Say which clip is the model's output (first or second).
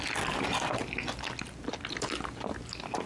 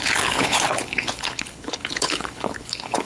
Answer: second